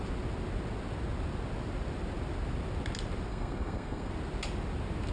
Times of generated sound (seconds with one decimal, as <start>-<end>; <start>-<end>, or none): 3.3-4.1